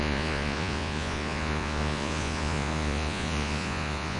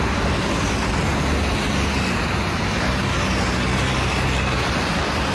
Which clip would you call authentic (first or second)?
second